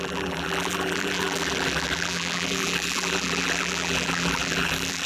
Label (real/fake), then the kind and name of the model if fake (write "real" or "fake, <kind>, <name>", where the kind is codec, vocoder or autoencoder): fake, vocoder, BigVGAN v2